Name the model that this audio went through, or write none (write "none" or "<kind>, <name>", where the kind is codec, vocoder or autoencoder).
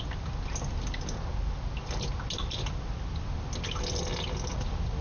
none